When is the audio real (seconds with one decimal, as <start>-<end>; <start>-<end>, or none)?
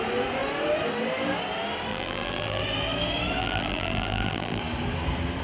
0.0-1.9; 2.6-3.4; 4.6-5.4